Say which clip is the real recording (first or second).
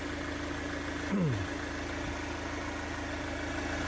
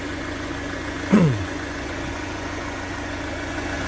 first